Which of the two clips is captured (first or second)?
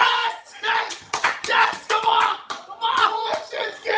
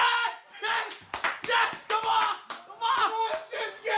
second